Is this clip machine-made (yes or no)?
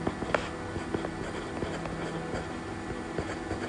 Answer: no